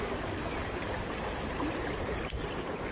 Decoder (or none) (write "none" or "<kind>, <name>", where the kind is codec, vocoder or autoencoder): none